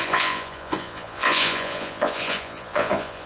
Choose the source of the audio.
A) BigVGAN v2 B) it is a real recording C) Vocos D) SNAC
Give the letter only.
C